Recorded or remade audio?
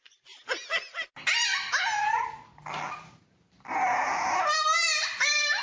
recorded